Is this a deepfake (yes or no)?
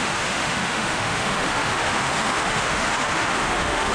yes